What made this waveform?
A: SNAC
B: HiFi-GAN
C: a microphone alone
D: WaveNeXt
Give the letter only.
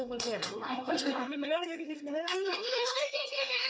A